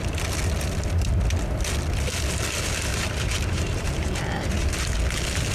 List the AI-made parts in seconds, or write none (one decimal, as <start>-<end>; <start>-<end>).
2.9-3.9